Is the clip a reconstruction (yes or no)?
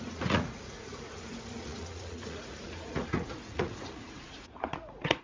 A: yes